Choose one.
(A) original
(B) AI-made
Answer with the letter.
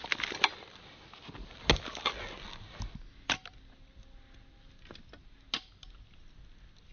A